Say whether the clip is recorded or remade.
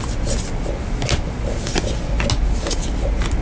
recorded